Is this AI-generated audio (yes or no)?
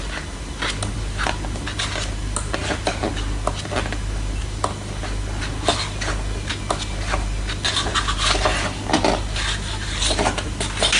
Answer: no